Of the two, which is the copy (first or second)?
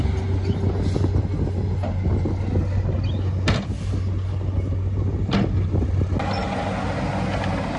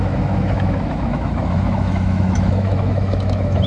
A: second